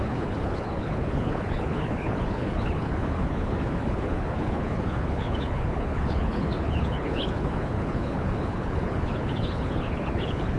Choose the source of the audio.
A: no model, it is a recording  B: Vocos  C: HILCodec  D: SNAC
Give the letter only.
C